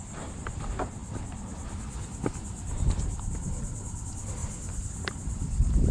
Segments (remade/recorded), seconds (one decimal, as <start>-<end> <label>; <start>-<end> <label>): 0.0-5.9 recorded